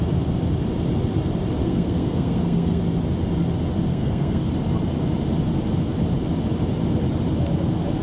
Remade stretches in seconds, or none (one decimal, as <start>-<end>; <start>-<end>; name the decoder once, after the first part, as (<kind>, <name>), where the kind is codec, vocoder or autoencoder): 1.6-2.8 (codec, SNAC); 3.9-4.5